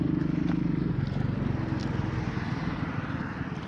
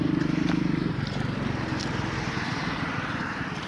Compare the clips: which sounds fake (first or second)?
second